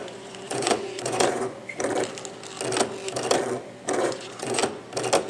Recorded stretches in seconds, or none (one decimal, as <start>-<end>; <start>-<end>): 1.6-4.0; 4.6-5.3